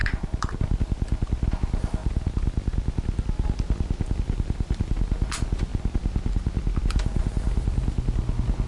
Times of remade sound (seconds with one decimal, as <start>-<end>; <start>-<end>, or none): 0.0-2.0; 4.2-5.7; 6.8-8.7

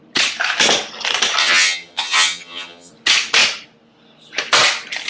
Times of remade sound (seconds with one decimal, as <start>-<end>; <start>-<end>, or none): 1.4-2.9

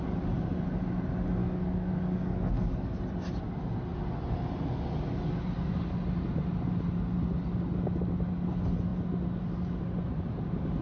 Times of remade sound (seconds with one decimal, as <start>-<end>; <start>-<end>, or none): 1.4-3.0

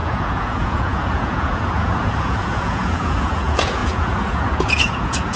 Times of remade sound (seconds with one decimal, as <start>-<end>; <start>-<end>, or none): 0.0-5.4

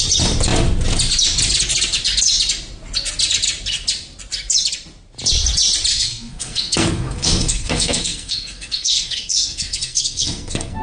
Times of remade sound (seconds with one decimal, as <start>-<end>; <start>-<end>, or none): 5.9-10.8

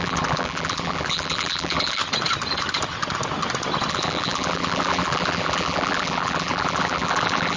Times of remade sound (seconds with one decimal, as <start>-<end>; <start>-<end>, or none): 0.0-2.0; 3.9-7.6

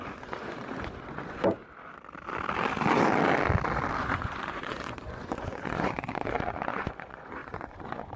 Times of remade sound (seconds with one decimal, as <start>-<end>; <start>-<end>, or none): 0.0-1.6; 4.0-8.2